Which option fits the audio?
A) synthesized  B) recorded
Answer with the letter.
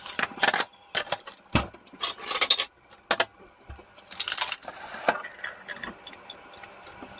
B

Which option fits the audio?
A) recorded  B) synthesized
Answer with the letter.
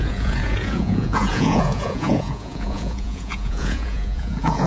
B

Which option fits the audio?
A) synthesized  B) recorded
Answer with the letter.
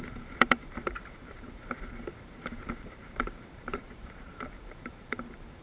A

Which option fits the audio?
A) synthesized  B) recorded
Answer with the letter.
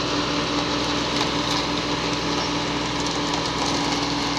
B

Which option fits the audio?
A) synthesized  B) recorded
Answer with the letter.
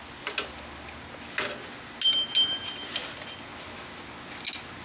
B